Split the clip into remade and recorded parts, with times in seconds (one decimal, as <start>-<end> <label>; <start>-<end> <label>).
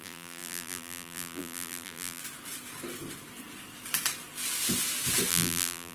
0.0-2.2 remade; 2.2-5.3 recorded; 5.3-5.9 remade